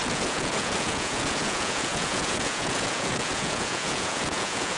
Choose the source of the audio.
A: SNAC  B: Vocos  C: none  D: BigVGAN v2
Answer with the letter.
B